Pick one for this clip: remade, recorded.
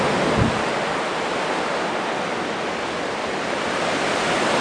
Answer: recorded